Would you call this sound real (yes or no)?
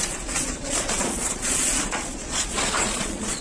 no